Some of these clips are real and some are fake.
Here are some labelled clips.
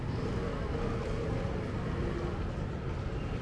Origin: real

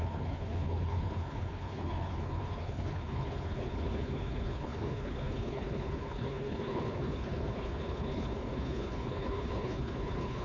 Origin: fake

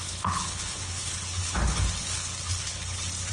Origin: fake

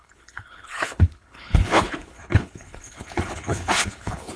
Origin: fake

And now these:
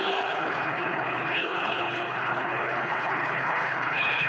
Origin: fake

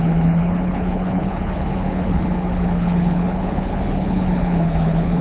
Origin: fake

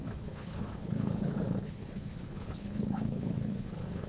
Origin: fake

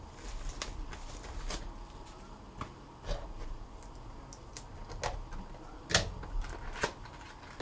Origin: real